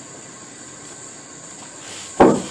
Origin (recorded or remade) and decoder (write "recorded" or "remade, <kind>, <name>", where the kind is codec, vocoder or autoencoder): recorded